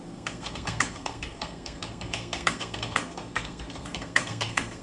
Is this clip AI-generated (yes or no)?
yes